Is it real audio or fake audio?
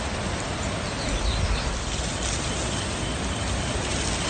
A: real